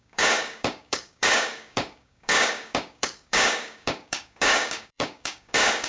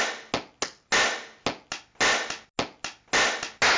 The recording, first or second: second